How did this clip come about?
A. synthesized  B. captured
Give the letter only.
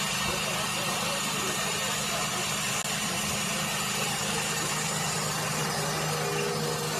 B